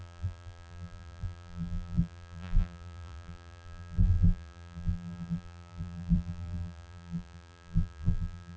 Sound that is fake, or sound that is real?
fake